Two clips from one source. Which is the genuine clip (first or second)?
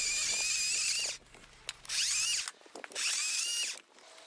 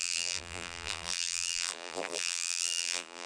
first